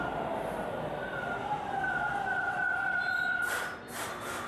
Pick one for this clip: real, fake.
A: real